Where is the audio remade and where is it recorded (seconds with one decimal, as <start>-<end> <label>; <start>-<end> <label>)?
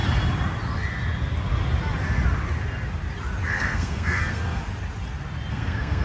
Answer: 0.0-3.5 recorded; 3.5-4.6 remade; 4.6-5.5 recorded; 5.5-6.0 remade